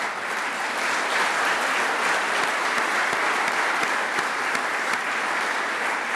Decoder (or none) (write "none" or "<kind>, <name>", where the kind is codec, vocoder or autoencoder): vocoder, BigVGAN v2